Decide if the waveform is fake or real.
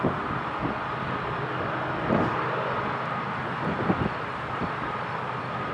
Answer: real